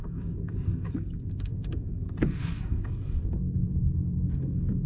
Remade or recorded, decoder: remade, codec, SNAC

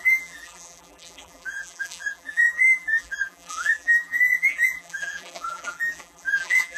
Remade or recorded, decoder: remade, vocoder, BigVGAN v2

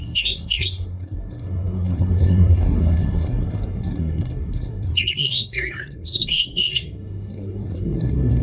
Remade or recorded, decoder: remade, codec, SNAC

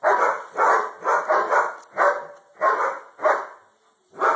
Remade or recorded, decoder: recorded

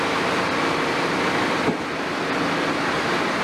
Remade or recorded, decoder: recorded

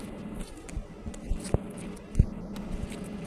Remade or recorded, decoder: recorded